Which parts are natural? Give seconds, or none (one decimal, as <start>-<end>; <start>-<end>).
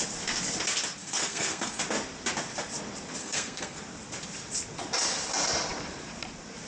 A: 0.0-1.0; 1.8-3.2; 3.8-6.7